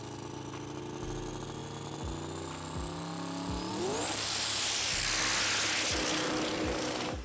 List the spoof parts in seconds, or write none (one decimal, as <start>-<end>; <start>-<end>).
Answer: none